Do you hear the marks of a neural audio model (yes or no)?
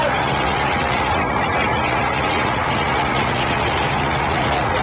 yes